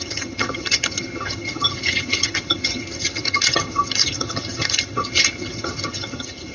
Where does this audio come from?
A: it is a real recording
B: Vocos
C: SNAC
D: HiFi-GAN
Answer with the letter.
D